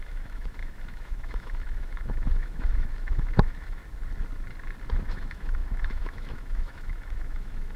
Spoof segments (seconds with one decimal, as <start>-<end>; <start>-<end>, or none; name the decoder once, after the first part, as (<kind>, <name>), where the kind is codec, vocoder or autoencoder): 0.0-3.8 (autoencoder, DAC-VAE); 4.9-7.8